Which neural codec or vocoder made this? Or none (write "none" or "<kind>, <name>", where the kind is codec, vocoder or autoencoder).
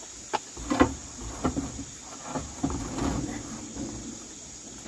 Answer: none